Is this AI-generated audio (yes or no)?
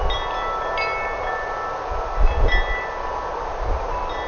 no